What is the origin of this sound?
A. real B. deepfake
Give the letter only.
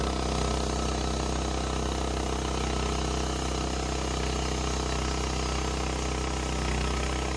A